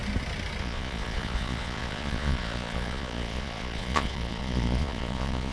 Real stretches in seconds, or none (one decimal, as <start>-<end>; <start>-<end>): 0.0-0.6